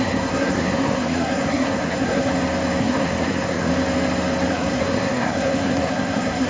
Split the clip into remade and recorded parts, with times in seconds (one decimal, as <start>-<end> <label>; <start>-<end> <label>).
0.0-2.3 remade; 2.3-2.8 recorded; 2.8-3.7 remade; 3.7-4.5 recorded; 4.5-6.5 remade